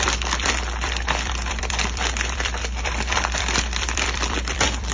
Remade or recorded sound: remade